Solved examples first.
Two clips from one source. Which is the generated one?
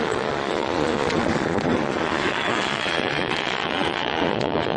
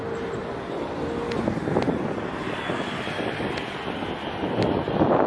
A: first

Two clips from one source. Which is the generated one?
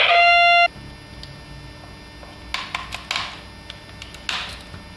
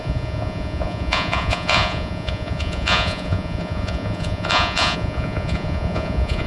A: second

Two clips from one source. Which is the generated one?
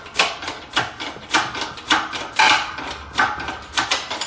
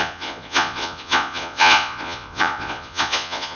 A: second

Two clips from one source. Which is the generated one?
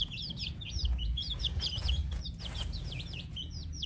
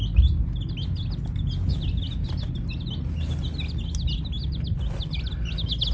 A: first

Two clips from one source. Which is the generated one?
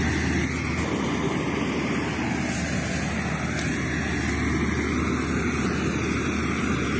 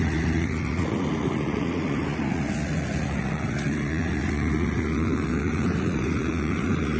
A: second